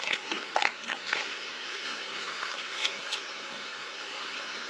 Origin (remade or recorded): remade